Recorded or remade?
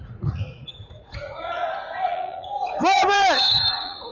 remade